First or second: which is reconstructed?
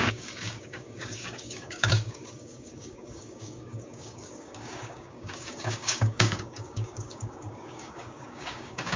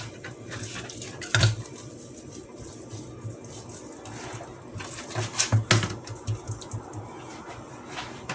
first